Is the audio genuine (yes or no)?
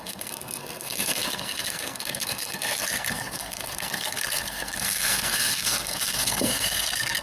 no